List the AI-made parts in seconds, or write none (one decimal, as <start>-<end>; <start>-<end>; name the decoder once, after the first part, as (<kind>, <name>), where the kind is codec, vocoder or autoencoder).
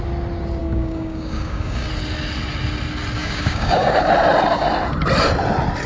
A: 0.6-1.9 (codec, DAC); 3.2-4.0